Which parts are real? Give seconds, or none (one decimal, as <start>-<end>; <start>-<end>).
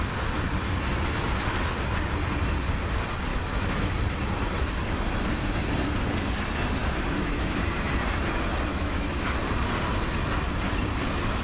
0.0-3.3; 3.9-6.8; 7.6-8.7; 9.2-11.4